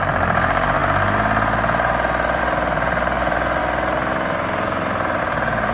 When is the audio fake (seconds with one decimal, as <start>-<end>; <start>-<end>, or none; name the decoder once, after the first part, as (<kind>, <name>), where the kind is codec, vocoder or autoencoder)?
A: 0.0-0.8 (vocoder, BigVGAN v2); 2.4-3.6; 5.2-5.7